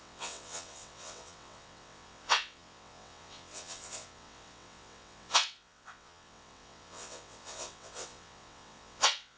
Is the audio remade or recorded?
remade